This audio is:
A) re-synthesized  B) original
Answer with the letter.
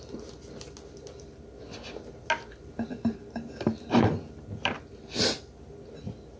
B